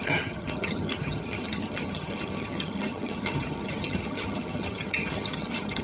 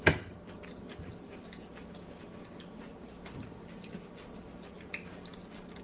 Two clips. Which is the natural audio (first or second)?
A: second